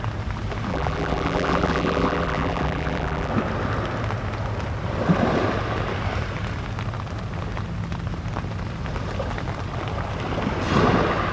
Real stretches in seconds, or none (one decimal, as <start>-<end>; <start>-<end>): 0.0-0.7; 3.3-11.3